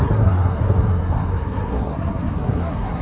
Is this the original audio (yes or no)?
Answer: no